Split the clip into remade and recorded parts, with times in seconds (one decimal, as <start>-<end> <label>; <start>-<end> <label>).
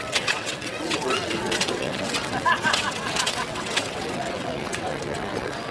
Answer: 0.0-5.7 remade